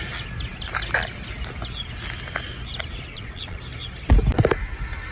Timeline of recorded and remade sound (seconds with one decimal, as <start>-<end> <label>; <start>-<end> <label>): 0.0-3.1 recorded; 3.1-3.6 remade; 3.6-5.1 recorded